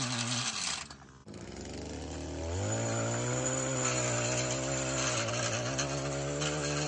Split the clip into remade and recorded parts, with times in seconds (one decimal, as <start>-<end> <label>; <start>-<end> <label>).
0.0-6.9 recorded